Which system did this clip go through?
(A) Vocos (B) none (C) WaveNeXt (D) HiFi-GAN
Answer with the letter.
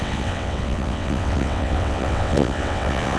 C